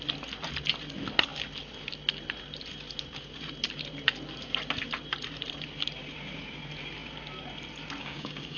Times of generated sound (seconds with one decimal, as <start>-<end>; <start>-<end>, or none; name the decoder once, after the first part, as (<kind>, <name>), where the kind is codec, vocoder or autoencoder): 8.0-8.6 (codec, DAC)